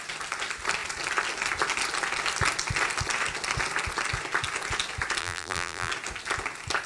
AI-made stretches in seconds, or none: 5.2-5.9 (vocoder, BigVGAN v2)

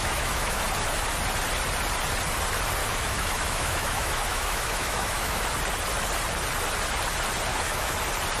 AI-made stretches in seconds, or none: 0.0-0.6 (autoencoder, DAC-VAE); 2.8-5.4; 7.5-8.0